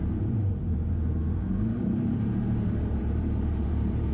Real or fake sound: fake